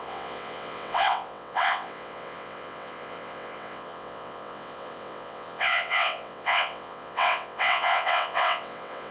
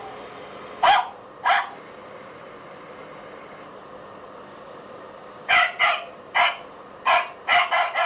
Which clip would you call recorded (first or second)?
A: second